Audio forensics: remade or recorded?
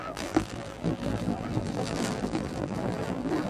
remade